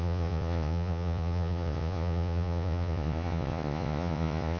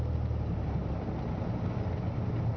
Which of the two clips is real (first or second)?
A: second